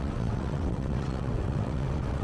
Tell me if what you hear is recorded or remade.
remade